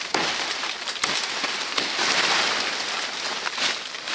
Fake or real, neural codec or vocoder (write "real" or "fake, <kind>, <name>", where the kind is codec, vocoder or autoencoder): real